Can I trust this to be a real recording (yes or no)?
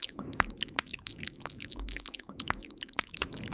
no